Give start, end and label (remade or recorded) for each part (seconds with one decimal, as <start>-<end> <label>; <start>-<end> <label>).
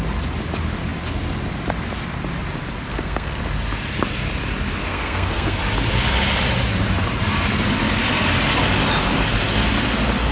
0.0-2.9 recorded; 2.9-3.4 remade; 3.4-4.9 recorded; 4.9-5.6 remade; 5.6-10.3 recorded